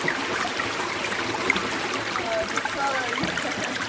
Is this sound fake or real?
fake